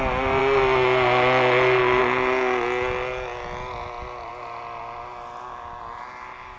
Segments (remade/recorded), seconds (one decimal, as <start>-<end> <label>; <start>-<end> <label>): 0.0-6.6 recorded